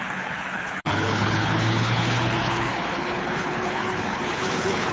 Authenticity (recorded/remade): remade